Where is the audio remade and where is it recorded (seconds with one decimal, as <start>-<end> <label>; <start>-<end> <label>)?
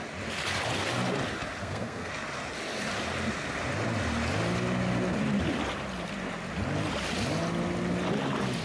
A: 0.0-1.6 recorded; 1.6-2.1 remade; 2.1-8.6 recorded